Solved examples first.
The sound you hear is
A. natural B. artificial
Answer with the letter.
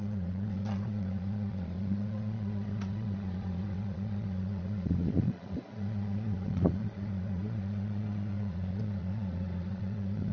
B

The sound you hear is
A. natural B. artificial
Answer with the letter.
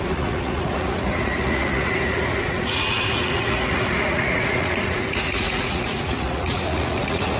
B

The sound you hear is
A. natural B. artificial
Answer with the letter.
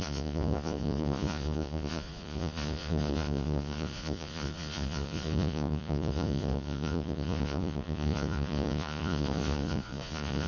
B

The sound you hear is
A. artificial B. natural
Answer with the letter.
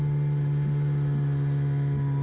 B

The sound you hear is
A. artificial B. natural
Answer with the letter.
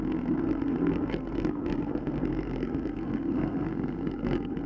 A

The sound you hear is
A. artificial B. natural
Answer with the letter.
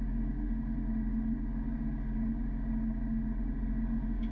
B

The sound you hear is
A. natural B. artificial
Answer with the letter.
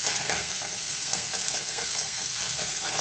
B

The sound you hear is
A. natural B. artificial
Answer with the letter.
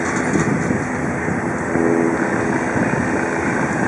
A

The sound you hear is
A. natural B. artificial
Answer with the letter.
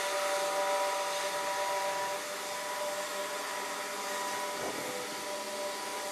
A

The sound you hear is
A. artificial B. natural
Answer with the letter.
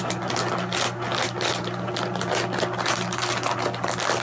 B